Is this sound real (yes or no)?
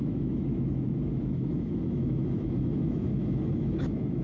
no